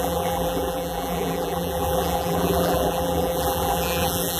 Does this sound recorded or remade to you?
remade